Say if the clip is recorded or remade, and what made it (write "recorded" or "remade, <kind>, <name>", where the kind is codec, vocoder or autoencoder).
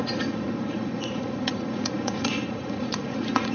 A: remade, vocoder, Vocos